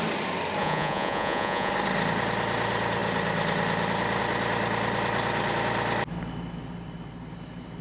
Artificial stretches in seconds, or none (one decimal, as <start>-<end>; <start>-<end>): 0.6-1.7